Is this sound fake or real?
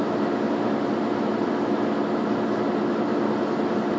real